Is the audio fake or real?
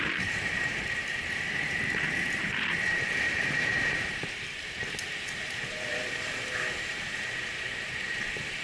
fake